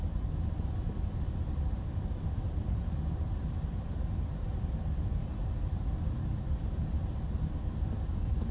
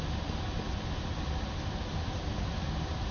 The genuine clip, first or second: second